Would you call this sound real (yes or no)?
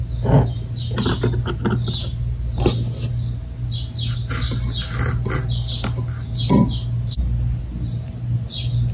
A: yes